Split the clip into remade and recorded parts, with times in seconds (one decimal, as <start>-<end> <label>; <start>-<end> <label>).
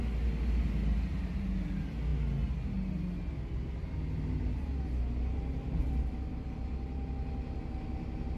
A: 0.0-8.4 recorded